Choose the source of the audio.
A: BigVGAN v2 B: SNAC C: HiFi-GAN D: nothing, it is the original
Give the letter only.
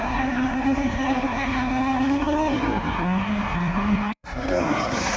B